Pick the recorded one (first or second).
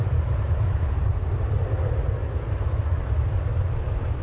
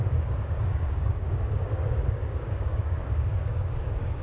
first